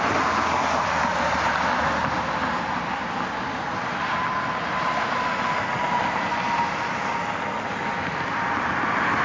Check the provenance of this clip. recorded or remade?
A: recorded